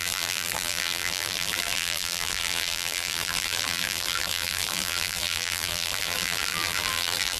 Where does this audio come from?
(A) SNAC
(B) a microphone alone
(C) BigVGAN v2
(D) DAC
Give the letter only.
C